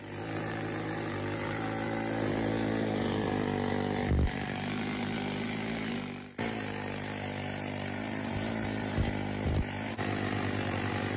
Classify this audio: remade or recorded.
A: recorded